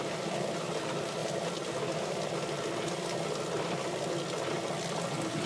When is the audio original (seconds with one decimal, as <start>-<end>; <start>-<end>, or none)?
0.0-5.5